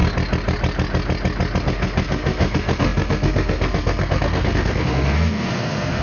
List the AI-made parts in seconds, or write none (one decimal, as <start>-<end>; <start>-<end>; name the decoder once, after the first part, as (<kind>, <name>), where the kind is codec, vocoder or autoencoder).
1.6-6.0 (codec, SNAC)

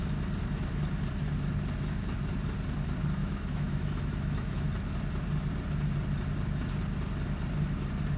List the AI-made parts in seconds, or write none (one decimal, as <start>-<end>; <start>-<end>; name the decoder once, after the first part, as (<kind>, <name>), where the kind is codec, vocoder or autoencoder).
3.2-4.7 (autoencoder, DAC-VAE)

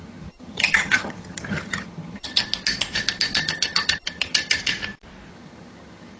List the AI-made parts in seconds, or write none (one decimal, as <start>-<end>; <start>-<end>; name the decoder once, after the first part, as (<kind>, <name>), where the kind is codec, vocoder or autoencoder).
0.0-2.4 (vocoder, HiFi-GAN); 3.4-4.6; 5.3-6.2